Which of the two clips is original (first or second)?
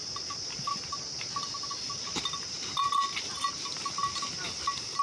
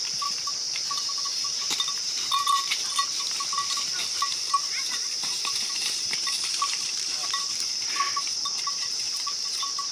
first